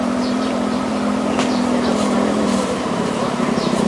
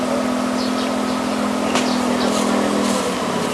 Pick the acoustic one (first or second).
second